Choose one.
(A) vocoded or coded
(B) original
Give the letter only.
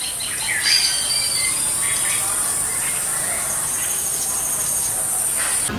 B